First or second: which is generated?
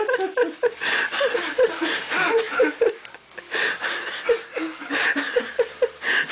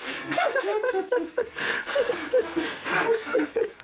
second